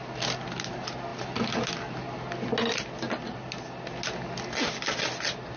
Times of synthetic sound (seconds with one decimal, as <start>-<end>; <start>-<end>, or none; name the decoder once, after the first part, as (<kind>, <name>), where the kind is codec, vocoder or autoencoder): none